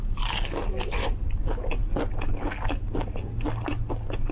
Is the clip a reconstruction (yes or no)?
no